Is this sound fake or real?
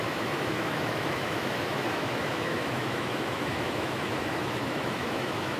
fake